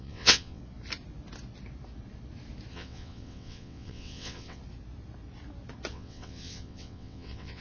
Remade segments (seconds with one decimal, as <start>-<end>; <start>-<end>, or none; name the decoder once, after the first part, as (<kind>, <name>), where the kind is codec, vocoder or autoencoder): 0.0-0.6 (vocoder, WaveNeXt); 2.7-4.6; 5.9-7.6